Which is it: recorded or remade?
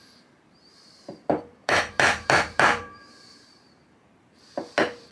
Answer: remade